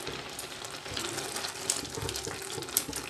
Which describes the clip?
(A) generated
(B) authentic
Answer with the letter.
B